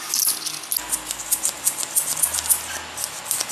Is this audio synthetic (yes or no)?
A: no